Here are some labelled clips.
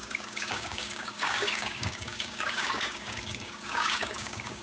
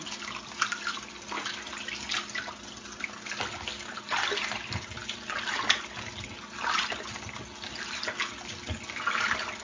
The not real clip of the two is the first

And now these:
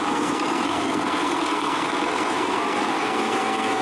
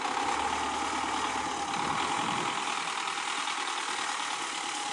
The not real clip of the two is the first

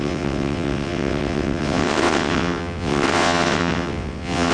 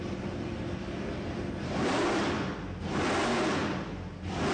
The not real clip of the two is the first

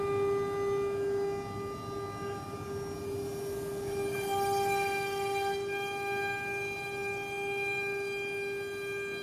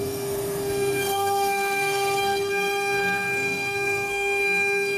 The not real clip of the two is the second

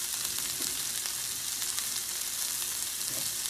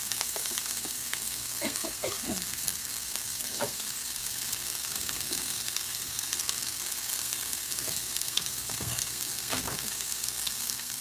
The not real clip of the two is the second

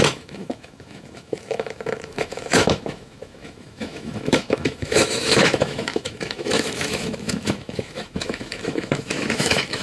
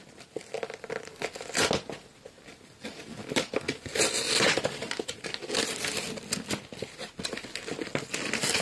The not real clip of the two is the first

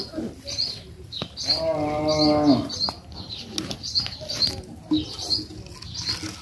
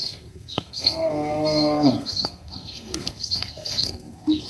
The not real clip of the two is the second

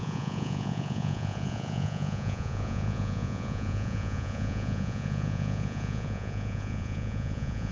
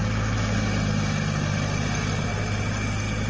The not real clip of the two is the first